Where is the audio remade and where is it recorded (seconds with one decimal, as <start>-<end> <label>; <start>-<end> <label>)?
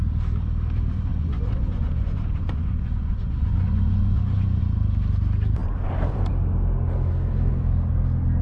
0.0-1.1 recorded; 1.1-4.6 remade; 4.6-8.4 recorded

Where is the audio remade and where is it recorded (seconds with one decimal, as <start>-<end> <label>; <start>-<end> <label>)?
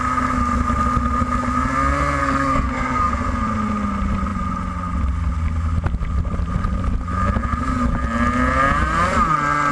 0.0-2.2 recorded; 2.2-3.1 remade; 3.1-9.7 recorded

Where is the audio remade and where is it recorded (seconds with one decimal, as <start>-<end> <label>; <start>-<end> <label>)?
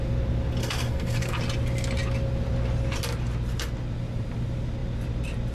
0.0-0.6 recorded; 0.6-1.4 remade; 1.4-5.5 recorded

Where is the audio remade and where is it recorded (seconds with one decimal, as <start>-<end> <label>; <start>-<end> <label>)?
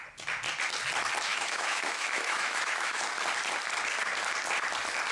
0.0-1.3 recorded; 1.3-3.0 remade; 3.0-5.1 recorded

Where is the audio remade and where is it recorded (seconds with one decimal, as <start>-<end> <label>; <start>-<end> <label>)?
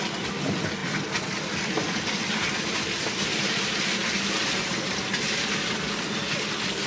0.0-6.9 recorded